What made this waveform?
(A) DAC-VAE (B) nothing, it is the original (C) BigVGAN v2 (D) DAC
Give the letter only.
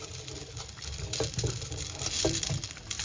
B